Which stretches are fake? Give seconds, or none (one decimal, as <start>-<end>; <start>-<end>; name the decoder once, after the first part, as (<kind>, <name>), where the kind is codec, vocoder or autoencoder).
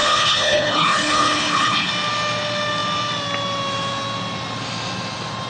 0.0-1.9 (codec, HILCodec)